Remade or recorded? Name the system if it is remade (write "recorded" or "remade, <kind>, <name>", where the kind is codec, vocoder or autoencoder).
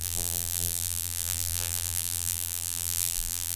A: remade, vocoder, BigVGAN v2